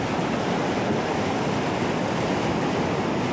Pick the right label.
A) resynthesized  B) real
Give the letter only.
B